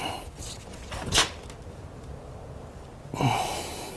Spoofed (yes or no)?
no